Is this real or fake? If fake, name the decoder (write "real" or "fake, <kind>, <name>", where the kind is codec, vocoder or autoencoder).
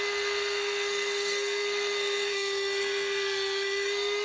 fake, codec, SNAC